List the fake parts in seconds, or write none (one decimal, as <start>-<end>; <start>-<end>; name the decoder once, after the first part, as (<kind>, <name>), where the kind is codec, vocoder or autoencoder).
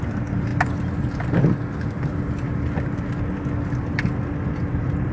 none